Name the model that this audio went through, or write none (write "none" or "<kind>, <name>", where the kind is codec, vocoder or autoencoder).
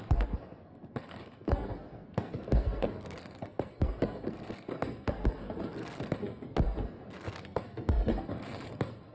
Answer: codec, SNAC